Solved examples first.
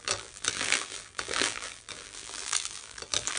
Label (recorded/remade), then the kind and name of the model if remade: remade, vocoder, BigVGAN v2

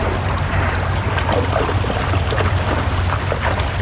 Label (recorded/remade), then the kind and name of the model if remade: recorded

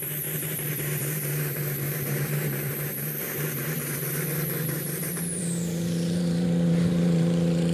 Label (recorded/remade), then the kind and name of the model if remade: remade, vocoder, BigVGAN v2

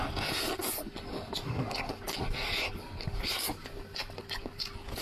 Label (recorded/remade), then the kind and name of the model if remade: recorded